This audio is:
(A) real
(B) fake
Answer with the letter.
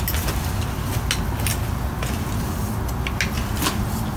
A